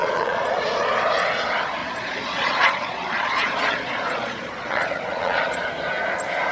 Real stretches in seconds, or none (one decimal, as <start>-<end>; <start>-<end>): 0.9-1.8; 5.7-6.5